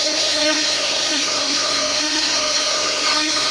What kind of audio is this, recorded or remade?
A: remade